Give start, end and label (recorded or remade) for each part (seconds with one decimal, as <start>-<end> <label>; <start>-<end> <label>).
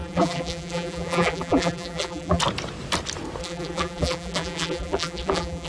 0.0-2.4 remade; 2.4-3.4 recorded; 3.4-5.7 remade